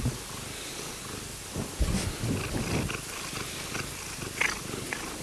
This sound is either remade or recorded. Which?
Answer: recorded